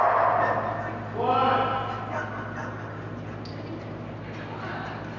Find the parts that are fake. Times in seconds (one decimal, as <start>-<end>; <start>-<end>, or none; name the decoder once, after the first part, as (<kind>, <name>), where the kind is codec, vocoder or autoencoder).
none